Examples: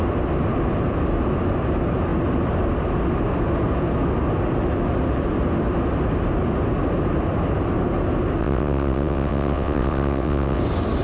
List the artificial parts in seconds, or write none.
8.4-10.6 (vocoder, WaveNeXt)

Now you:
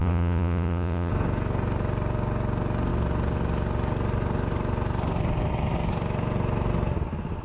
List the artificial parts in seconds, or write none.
0.0-1.1 (vocoder, Vocos)

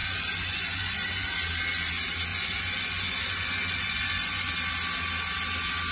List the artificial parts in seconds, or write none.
0.0-1.3 (vocoder, Vocos); 2.3-4.5

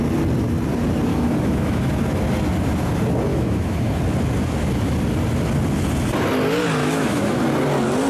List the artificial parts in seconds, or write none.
1.1-1.9 (autoencoder, DAC-VAE); 3.3-4.0; 6.8-7.4

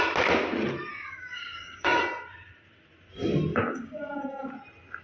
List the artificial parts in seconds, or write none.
0.9-2.0 (codec, DAC); 3.5-4.5

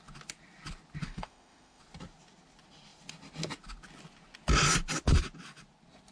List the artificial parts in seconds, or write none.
1.0-1.8 (autoencoder, DAC-VAE)

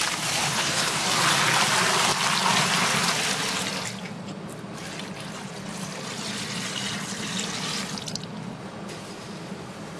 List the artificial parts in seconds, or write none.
0.4-1.0 (codec, HILCodec)

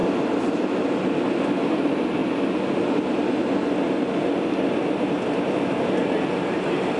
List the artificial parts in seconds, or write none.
none